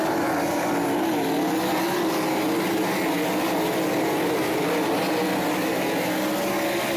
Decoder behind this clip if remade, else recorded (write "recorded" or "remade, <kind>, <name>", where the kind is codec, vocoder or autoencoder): recorded